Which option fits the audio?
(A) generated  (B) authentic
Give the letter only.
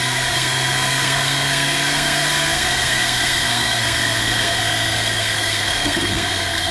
A